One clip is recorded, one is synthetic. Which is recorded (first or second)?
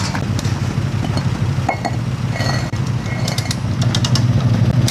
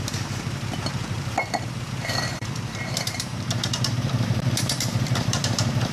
first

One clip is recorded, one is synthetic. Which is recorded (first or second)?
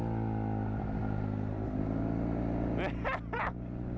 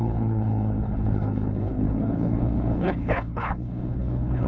first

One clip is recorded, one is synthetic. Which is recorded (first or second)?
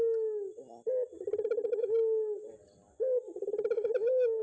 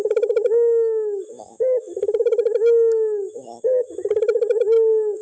first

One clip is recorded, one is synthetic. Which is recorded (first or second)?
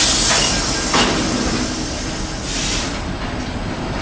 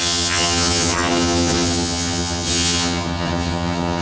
first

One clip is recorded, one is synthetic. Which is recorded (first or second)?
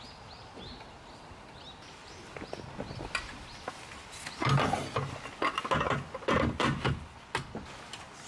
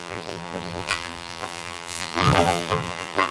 first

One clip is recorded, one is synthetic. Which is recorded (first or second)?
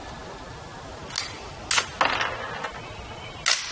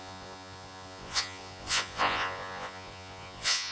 first